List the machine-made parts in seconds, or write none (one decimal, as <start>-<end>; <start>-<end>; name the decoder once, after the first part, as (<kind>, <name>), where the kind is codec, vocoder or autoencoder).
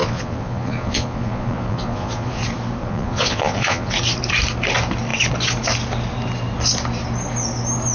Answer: 0.0-2.4 (vocoder, Vocos); 2.8-3.9